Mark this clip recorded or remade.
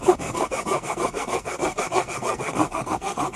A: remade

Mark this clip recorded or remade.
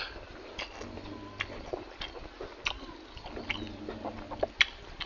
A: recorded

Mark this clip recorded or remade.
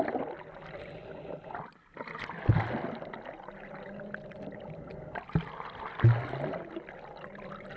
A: recorded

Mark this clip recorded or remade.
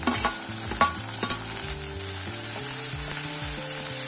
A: recorded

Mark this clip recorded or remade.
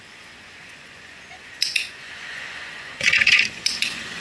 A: remade